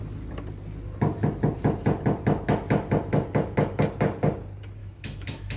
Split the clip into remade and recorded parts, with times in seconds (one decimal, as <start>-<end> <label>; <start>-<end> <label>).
0.0-4.8 recorded; 4.8-5.6 remade